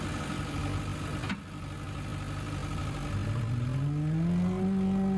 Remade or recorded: recorded